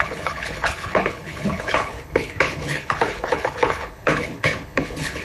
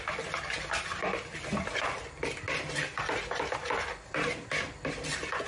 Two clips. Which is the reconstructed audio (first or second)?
first